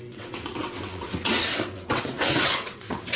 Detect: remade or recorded remade